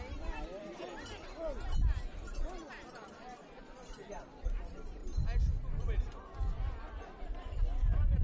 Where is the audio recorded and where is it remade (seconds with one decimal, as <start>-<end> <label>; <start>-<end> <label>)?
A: 0.0-5.0 remade; 5.0-5.7 recorded; 5.7-8.2 remade